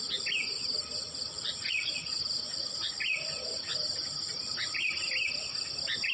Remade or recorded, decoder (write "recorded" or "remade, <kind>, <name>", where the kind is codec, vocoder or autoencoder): recorded